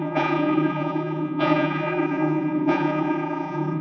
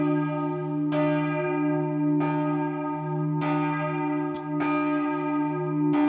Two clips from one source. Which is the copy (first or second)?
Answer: first